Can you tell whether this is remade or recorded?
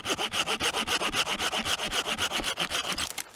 recorded